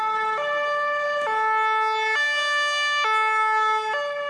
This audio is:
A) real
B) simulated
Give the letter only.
A